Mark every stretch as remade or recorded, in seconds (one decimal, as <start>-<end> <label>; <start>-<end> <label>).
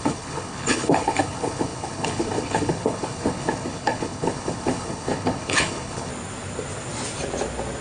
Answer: 0.0-6.1 remade; 6.1-7.8 recorded